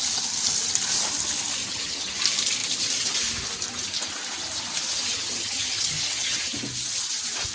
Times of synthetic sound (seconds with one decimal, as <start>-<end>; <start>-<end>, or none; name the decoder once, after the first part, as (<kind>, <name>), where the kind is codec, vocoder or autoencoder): 1.6-2.2 (vocoder, HiFi-GAN); 5.1-6.5